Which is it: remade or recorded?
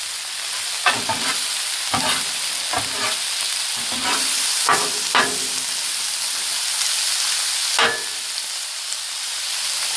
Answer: recorded